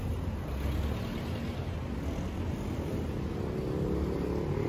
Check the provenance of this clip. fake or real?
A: real